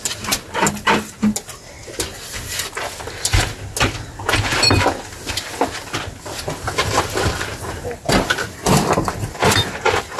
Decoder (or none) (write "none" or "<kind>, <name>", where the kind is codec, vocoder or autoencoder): none